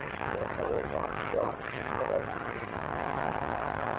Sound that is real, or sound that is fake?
fake